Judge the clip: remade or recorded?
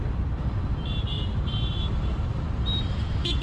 remade